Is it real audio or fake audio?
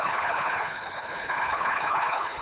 fake